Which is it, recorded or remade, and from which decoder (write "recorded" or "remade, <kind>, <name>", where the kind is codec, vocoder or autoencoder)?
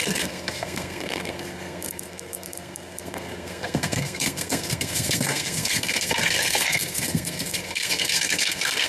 remade, codec, SNAC